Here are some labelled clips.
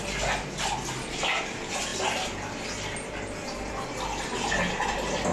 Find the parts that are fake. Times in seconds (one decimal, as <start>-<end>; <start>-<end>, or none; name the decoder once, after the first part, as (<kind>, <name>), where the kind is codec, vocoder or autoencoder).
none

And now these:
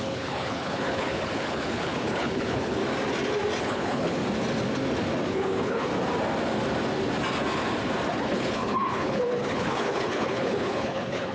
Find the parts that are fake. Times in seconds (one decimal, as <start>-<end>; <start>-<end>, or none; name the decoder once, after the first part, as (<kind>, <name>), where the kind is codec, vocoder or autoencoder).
0.0-2.8 (codec, HILCodec); 3.6-4.2; 5.3-5.9; 8.1-11.3

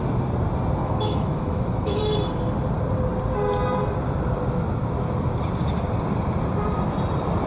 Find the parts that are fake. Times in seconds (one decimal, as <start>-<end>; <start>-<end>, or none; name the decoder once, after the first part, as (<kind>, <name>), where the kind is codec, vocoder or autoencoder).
0.8-2.0 (autoencoder, DAC-VAE)

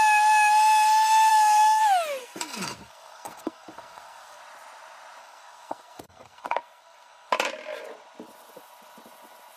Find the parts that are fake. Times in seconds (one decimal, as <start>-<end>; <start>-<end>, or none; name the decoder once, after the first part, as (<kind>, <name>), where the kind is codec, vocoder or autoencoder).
1.3-1.8 (codec, SNAC); 2.2-4.4; 5.2-7.3

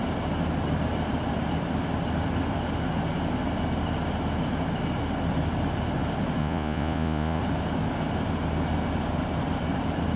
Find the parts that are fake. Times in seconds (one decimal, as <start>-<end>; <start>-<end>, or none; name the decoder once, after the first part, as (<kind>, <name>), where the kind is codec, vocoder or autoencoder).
6.4-7.4 (vocoder, Vocos)

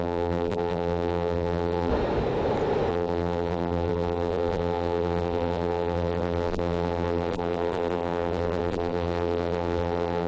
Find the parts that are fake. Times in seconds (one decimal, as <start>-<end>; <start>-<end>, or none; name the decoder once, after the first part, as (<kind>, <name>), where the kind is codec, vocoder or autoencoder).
0.0-1.9 (vocoder, BigVGAN v2); 2.9-10.3